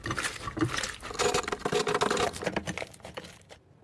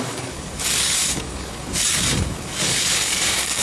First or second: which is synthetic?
second